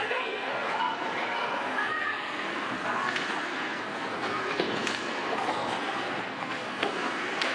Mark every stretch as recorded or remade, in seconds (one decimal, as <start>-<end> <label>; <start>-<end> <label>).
0.0-7.5 remade